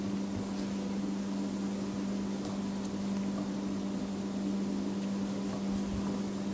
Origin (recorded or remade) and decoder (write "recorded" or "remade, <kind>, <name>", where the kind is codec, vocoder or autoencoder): recorded